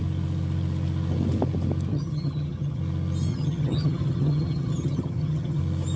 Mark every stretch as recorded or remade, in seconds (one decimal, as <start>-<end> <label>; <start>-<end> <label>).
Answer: 0.0-1.9 recorded; 1.9-2.8 remade; 2.8-3.3 recorded; 3.3-5.6 remade; 5.6-6.0 recorded